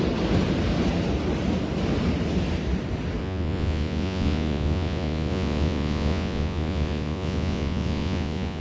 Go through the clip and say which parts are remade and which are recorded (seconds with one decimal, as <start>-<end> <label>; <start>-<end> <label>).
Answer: 0.0-3.2 recorded; 3.2-8.6 remade